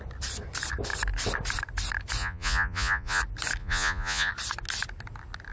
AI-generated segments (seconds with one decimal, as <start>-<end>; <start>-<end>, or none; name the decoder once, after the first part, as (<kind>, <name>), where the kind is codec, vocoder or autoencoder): 2.2-3.2 (vocoder, Vocos); 3.6-4.3

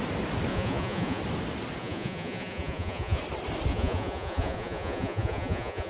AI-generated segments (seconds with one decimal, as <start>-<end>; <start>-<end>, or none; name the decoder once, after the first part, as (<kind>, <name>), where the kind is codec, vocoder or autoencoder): 0.5-1.2 (vocoder, Vocos); 1.8-3.2; 3.7-5.9

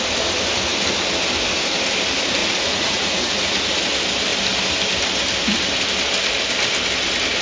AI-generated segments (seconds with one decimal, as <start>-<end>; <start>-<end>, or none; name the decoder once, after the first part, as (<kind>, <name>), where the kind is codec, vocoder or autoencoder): 2.4-3.8 (vocoder, Vocos)

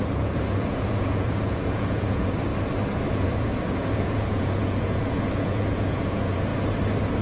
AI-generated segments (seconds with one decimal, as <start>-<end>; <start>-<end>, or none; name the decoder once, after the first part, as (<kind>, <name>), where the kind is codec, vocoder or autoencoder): 0.0-2.5 (vocoder, Vocos); 3.1-6.5

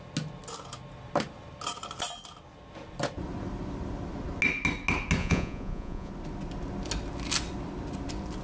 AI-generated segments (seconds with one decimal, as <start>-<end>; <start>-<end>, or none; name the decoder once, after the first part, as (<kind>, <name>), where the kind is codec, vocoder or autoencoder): 5.2-6.1 (vocoder, Vocos)

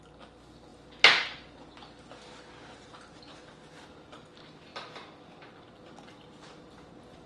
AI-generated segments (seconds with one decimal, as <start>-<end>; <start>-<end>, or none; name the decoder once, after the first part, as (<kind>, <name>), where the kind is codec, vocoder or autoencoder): none

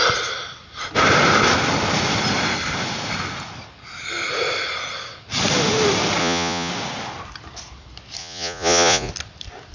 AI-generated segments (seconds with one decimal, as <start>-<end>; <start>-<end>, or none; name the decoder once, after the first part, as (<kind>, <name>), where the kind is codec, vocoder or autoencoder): 6.2-6.7 (vocoder, Vocos); 8.2-9.1

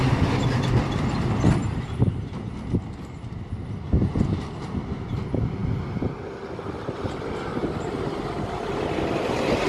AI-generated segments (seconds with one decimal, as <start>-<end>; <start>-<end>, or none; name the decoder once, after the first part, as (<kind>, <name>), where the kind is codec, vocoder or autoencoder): none